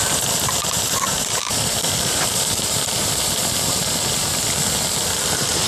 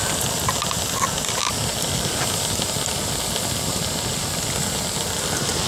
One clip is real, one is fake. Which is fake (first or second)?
first